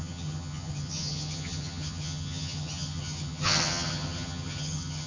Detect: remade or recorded remade